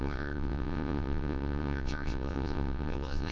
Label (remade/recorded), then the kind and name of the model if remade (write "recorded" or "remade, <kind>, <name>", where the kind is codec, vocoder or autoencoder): remade, vocoder, WaveNeXt